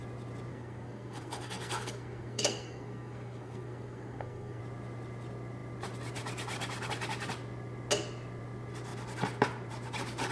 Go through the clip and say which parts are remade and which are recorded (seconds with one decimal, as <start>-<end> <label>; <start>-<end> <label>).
0.0-0.5 recorded; 0.5-4.6 remade; 4.6-10.3 recorded

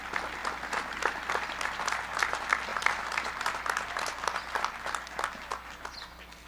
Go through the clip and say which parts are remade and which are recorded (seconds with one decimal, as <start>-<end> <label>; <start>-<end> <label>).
0.0-6.5 recorded

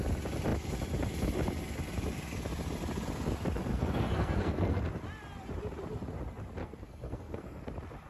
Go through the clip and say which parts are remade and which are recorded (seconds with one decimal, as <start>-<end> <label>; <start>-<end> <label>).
0.0-3.7 recorded; 3.7-4.8 remade; 4.8-6.6 recorded; 6.6-7.6 remade; 7.6-8.1 recorded